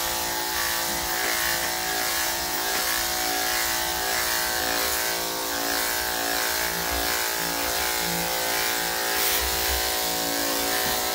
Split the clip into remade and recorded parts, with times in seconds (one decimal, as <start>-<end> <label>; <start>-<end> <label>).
0.0-2.1 recorded; 2.1-2.8 remade; 2.8-11.1 recorded